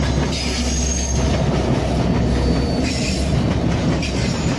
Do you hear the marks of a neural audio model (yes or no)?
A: no